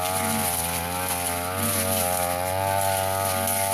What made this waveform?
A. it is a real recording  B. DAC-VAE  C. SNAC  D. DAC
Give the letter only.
A